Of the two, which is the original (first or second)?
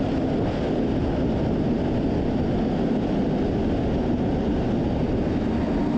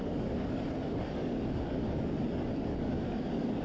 first